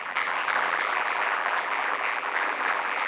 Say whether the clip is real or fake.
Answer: fake